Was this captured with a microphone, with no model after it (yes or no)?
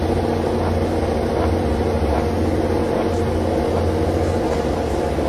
yes